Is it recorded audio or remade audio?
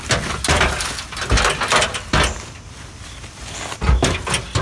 recorded